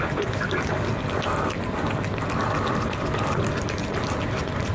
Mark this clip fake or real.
real